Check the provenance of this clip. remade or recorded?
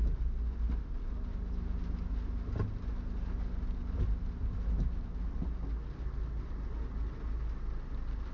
recorded